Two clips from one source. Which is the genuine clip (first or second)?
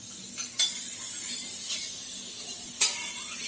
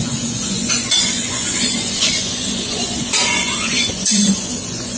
first